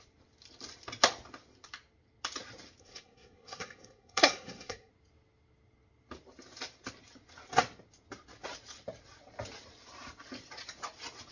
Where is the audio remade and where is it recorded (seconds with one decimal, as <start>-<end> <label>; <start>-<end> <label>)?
0.0-2.8 recorded; 2.8-4.9 remade; 4.9-11.3 recorded